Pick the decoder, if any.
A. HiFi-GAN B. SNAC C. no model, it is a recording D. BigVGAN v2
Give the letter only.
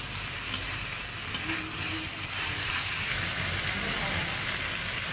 C